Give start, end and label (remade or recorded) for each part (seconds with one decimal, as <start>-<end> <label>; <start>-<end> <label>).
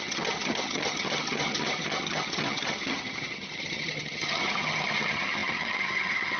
0.0-6.4 remade